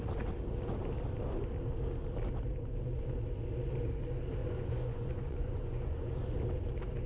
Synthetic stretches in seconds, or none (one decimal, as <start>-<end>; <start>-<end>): 4.4-6.1